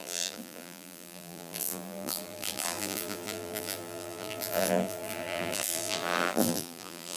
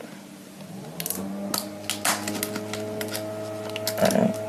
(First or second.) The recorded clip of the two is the second